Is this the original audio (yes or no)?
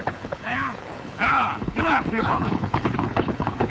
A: no